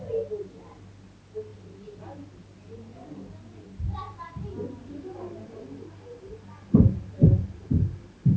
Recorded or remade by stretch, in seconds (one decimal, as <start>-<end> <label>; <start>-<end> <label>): 0.0-8.4 recorded